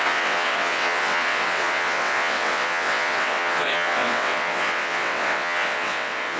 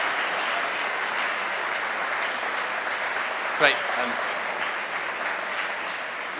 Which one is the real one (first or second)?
second